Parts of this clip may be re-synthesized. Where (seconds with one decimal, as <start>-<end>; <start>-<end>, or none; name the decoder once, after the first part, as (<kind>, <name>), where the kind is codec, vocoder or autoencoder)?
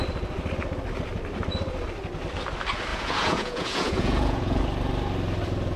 2.9-4.6 (vocoder, Vocos)